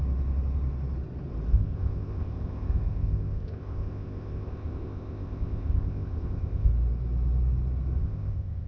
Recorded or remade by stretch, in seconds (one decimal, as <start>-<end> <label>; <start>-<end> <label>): 0.0-1.5 recorded; 1.5-6.7 remade; 6.7-8.0 recorded; 8.0-8.7 remade